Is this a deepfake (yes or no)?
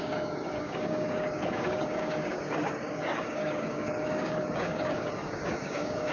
yes